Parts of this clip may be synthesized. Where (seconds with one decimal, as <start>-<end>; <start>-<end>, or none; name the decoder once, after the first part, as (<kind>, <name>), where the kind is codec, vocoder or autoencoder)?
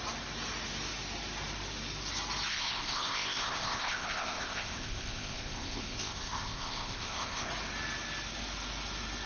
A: 2.5-7.5 (codec, ZipCodec)